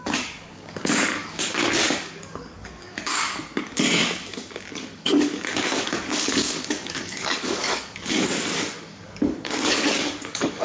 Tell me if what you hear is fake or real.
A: fake